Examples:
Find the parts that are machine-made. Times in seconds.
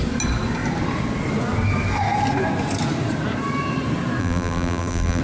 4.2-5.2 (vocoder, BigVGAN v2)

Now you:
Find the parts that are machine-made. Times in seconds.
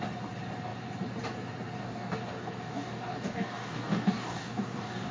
1.8-5.1 (codec, DAC)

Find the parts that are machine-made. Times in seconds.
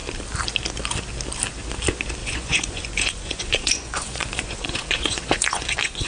2.2-6.1 (vocoder, Vocos)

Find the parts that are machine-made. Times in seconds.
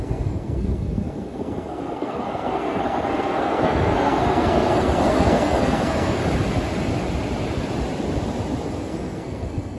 0.0-6.2 (codec, SNAC); 8.8-9.8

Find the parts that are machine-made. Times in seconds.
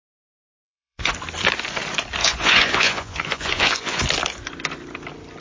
0.5-1.1 (vocoder, Vocos); 2.2-4.0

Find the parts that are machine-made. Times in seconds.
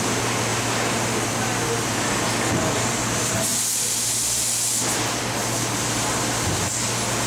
none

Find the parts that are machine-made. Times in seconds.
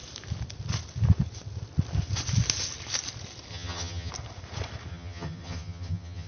3.5-4.1 (vocoder, HiFi-GAN); 4.9-6.3